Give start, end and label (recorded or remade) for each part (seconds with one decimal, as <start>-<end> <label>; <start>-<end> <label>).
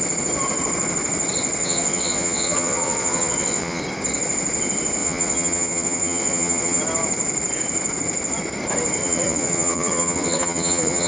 0.0-1.6 recorded; 1.6-3.8 remade; 3.8-5.0 recorded; 5.0-6.8 remade; 6.8-9.0 recorded; 9.0-11.1 remade